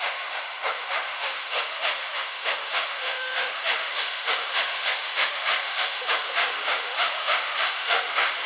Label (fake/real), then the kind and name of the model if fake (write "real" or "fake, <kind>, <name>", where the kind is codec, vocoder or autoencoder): fake, autoencoder, DAC-VAE